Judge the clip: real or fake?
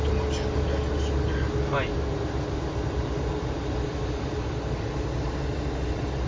real